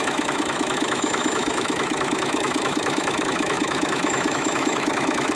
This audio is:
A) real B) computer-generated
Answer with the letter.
B